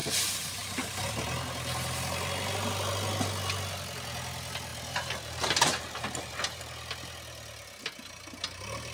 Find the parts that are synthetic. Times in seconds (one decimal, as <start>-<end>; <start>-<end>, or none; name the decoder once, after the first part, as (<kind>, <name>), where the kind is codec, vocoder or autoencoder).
0.0-1.1 (vocoder, BigVGAN v2); 4.7-6.6

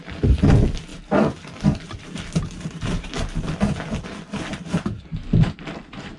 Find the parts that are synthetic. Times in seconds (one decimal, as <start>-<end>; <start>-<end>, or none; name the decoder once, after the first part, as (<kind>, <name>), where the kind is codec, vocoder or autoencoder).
0.9-3.5 (vocoder, BigVGAN v2); 4.5-6.2